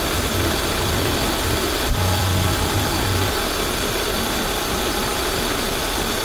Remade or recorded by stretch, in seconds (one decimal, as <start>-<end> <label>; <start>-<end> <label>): 0.0-6.2 recorded